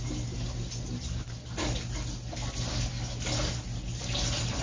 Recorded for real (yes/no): yes